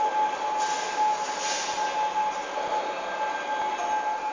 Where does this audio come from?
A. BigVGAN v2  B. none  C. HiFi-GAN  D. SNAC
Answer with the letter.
B